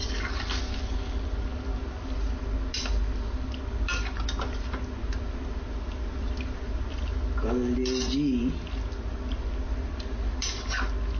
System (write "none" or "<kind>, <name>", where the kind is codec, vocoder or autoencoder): none